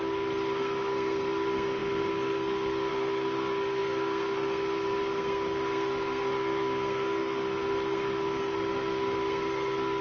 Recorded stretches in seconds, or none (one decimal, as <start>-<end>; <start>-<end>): none